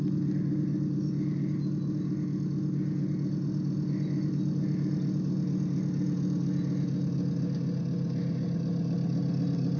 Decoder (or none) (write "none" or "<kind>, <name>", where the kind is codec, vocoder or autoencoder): none